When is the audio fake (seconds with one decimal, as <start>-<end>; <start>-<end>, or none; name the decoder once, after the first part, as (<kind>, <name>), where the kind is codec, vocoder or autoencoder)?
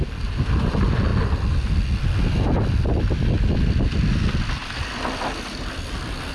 none